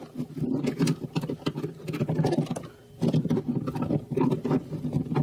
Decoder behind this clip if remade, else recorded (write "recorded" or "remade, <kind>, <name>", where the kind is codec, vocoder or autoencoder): remade, vocoder, BigVGAN v2